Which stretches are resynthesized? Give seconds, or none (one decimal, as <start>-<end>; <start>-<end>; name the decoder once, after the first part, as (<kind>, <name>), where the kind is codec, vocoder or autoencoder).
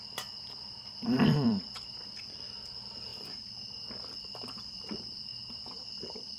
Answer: 0.0-5.3 (vocoder, BigVGAN v2)